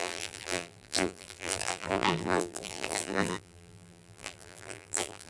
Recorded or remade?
remade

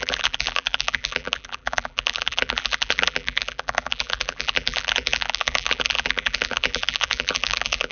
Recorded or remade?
remade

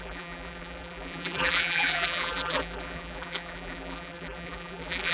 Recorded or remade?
remade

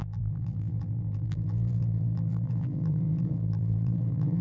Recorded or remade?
remade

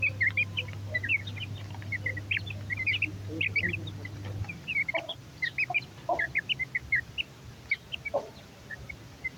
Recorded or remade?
recorded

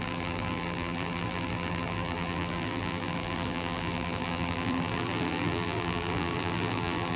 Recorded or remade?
remade